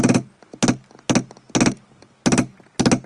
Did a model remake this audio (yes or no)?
no